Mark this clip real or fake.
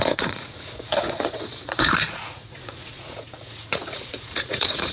fake